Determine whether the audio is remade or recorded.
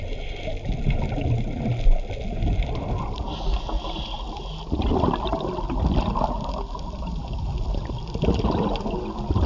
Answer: recorded